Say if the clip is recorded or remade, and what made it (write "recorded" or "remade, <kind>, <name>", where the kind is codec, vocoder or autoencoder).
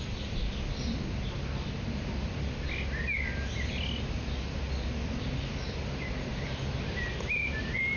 recorded